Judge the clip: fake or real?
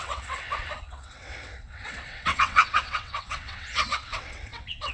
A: fake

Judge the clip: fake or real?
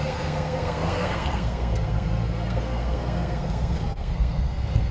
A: fake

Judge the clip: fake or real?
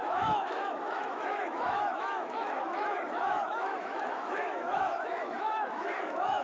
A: fake